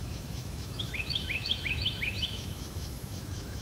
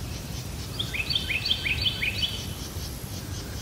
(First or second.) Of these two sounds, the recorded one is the second